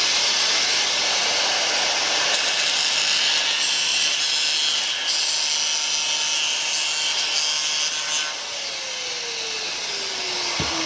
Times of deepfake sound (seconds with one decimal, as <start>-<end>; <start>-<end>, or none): none